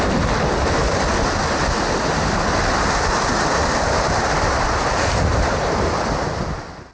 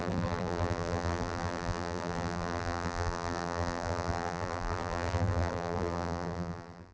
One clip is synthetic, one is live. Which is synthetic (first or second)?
second